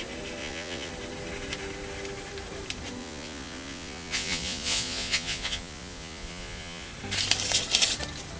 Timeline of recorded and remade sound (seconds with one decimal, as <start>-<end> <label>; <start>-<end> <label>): 0.0-0.4 recorded; 0.4-0.9 remade; 0.9-3.0 recorded; 3.0-6.9 remade; 6.9-8.4 recorded